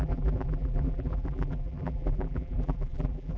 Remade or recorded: remade